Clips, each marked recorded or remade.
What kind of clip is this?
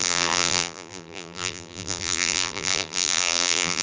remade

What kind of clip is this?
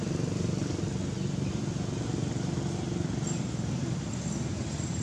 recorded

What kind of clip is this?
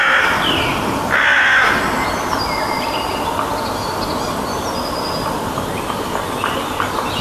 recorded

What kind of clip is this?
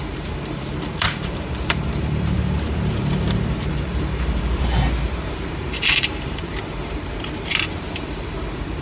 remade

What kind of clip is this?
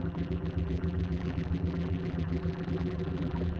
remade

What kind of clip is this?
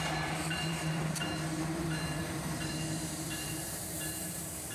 remade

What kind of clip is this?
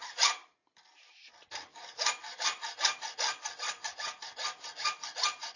recorded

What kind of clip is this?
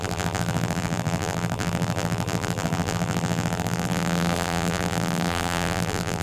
remade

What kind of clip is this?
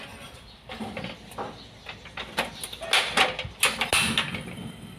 recorded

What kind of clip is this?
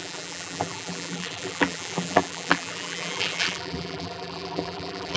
remade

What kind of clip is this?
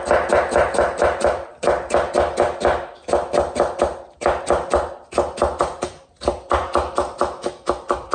remade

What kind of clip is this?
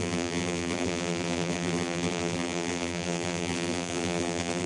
remade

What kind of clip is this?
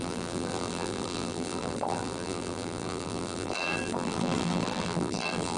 remade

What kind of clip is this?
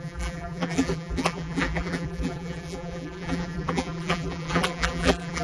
remade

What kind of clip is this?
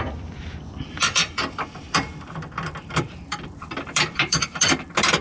remade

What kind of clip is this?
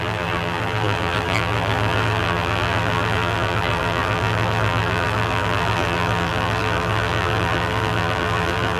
remade